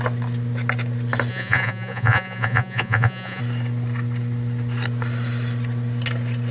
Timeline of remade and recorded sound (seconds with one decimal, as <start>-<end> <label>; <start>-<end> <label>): 0.0-1.3 recorded; 1.3-3.4 remade; 3.4-6.5 recorded